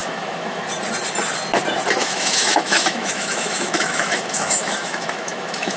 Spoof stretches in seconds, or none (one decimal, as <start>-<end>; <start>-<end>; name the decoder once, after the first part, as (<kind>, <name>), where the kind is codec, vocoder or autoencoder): 0.0-0.6 (autoencoder, DAC-VAE); 2.0-5.8